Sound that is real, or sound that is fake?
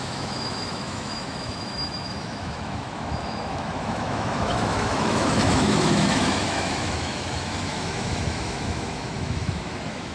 fake